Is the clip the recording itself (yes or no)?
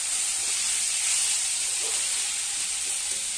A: yes